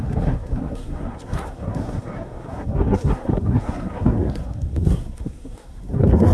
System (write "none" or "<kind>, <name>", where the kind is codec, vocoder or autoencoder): codec, SNAC